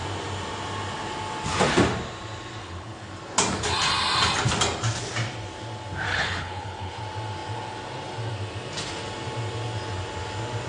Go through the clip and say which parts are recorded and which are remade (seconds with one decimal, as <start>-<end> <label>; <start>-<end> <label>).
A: 0.0-2.6 recorded; 2.6-3.1 remade; 3.1-6.1 recorded; 6.1-7.0 remade; 7.0-10.7 recorded